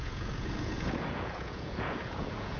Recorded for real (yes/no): no